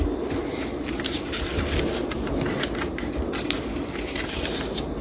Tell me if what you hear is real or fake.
real